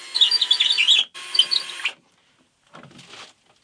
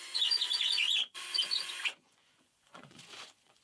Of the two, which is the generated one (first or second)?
second